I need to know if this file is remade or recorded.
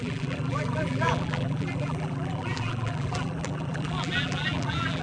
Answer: remade